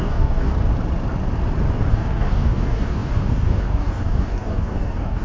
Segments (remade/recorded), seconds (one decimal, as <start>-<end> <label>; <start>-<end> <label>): 0.0-0.5 remade; 0.5-1.9 recorded; 1.9-5.2 remade